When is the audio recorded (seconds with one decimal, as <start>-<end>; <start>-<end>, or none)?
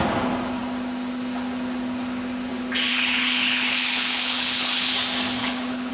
0.0-2.9; 4.9-5.4